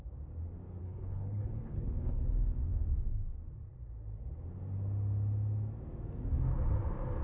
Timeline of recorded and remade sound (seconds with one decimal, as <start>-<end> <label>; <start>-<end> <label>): 0.0-0.8 recorded; 0.8-2.2 remade; 2.2-7.2 recorded